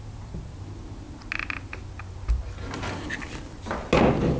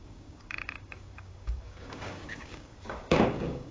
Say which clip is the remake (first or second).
second